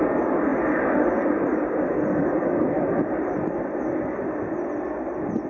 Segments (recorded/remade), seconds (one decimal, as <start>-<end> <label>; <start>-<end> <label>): 0.0-0.5 recorded; 0.5-3.8 remade; 3.8-5.5 recorded